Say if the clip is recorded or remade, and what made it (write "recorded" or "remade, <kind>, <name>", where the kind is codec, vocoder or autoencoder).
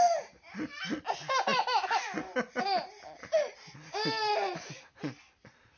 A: recorded